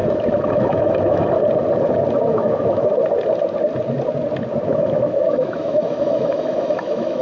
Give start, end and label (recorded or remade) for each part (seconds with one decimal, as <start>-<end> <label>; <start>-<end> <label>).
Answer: 0.0-1.3 remade; 1.3-2.3 recorded; 2.3-2.9 remade; 2.9-4.7 recorded; 4.7-7.2 remade